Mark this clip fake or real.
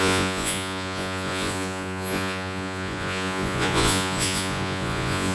fake